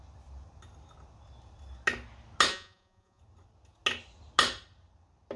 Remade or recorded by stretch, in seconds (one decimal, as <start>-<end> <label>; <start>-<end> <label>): 0.0-2.5 recorded; 2.5-3.2 remade; 3.2-5.4 recorded